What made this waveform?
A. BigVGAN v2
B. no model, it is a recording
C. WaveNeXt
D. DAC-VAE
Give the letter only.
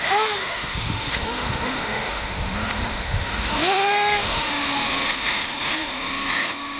D